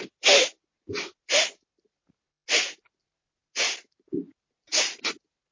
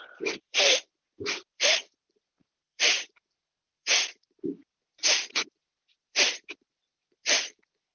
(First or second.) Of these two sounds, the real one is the first